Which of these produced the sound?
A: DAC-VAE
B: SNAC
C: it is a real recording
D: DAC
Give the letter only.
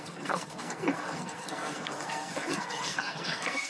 B